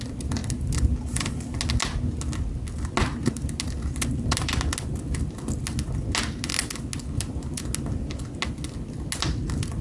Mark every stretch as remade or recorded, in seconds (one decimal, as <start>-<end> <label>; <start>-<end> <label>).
0.0-9.8 recorded